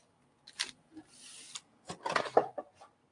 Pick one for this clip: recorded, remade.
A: recorded